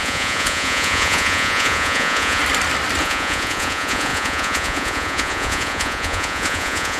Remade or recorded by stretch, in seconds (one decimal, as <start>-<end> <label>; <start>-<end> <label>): 0.0-2.4 remade; 2.4-3.0 recorded; 3.0-7.0 remade